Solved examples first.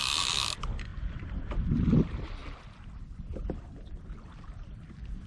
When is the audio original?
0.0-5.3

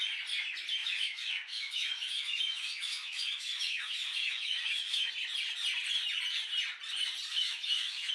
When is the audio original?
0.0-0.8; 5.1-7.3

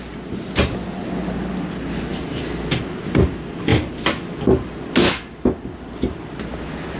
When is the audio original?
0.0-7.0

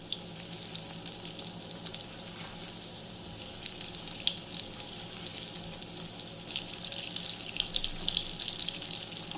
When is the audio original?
0.0-9.4

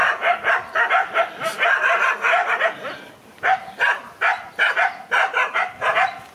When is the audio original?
0.0-6.3

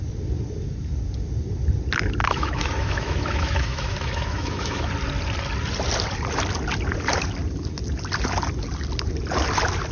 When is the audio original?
0.0-2.2; 4.9-9.9